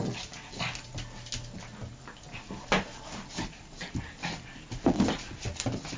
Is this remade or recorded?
recorded